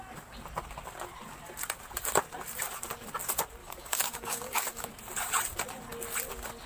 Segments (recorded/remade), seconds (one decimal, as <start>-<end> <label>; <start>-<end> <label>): 0.0-3.6 recorded; 3.6-4.9 remade; 4.9-6.7 recorded